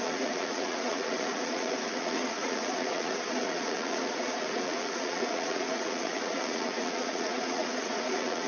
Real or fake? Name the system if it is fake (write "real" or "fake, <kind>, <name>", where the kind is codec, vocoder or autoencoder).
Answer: fake, vocoder, Vocos